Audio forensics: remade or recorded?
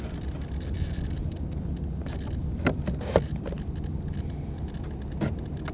recorded